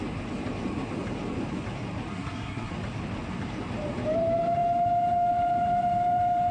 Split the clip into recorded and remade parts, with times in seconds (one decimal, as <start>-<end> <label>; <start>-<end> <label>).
0.0-2.1 recorded; 2.1-2.7 remade; 2.7-6.5 recorded